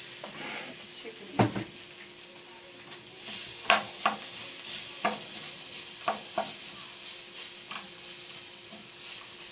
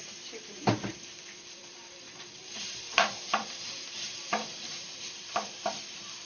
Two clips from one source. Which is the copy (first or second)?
second